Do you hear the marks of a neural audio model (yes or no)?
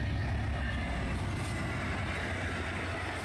no